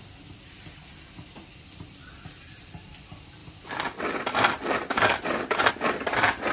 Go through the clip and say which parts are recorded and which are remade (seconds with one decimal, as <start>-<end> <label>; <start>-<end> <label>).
0.0-2.0 recorded; 2.0-2.6 remade; 2.6-3.4 recorded; 3.4-5.7 remade; 5.7-6.5 recorded